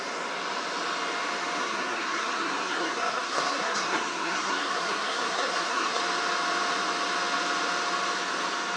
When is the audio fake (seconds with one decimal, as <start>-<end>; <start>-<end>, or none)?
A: 1.6-6.0

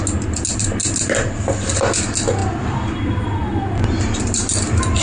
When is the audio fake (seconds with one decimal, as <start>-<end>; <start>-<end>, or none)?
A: none

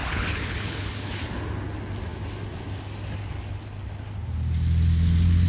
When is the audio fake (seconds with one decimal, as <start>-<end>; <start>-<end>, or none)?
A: 0.0-1.1

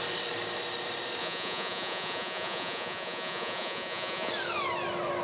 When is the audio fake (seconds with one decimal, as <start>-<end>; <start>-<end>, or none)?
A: 1.2-4.3

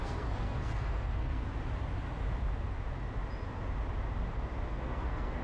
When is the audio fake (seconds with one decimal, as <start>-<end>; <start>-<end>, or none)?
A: 0.0-1.5; 4.7-5.4

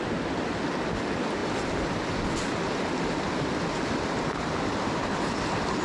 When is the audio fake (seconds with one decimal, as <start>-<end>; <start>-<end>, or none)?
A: none